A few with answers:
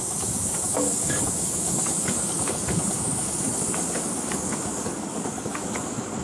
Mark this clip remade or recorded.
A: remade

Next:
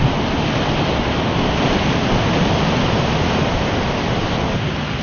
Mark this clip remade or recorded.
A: recorded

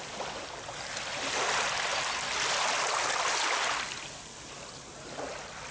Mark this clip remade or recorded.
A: recorded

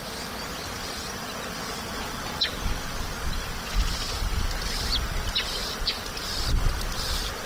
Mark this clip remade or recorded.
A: recorded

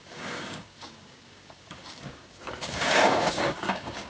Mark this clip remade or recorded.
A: remade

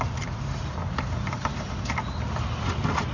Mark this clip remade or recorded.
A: recorded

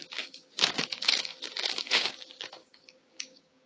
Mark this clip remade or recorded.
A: remade